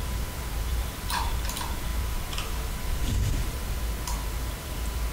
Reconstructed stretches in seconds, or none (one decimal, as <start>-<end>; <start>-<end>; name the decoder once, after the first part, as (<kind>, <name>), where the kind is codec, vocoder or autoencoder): 0.7-1.3 (vocoder, BigVGAN v2); 1.9-3.8